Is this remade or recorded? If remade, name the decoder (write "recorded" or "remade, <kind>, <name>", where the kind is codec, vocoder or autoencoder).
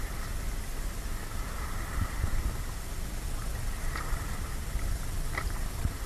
recorded